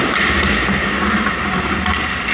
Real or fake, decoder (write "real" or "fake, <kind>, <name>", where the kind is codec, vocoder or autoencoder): real